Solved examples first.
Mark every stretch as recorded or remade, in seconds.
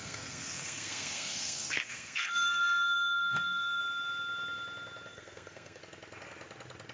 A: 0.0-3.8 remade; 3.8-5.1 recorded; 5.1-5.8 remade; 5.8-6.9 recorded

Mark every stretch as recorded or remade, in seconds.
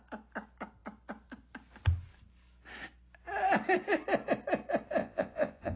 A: 0.0-5.0 recorded; 5.0-5.8 remade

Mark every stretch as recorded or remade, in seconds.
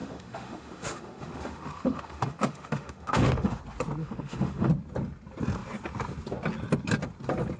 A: 0.0-3.6 remade; 3.6-4.0 recorded; 4.0-4.7 remade; 4.7-7.6 recorded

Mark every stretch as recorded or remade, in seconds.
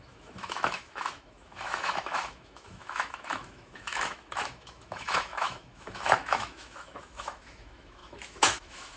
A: 0.0-9.0 remade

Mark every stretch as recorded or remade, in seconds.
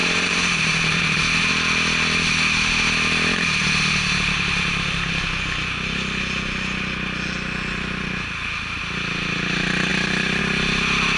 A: 0.0-1.5 remade; 1.5-9.9 recorded; 9.9-10.4 remade; 10.4-11.2 recorded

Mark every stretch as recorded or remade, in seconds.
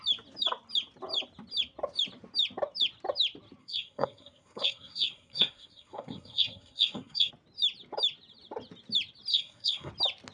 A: 0.0-3.6 recorded; 3.6-7.3 remade; 7.3-9.3 recorded; 9.3-9.9 remade; 9.9-10.3 recorded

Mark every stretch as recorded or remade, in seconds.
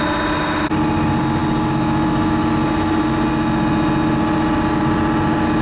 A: 0.0-5.6 recorded